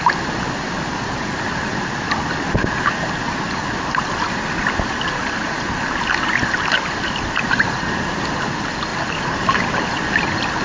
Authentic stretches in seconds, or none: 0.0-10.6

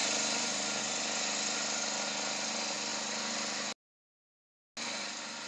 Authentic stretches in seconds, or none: 0.8-5.5

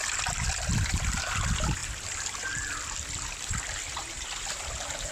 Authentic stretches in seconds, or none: 0.0-0.7

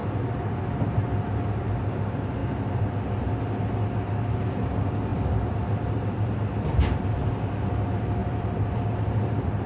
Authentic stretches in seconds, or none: 0.0-5.1; 7.6-8.2